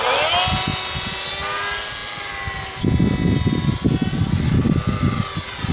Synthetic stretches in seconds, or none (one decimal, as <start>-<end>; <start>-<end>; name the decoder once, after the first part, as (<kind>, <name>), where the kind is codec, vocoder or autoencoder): none